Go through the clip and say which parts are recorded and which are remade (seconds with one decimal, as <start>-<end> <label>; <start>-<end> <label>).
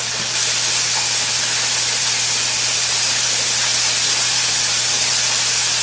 0.0-5.8 recorded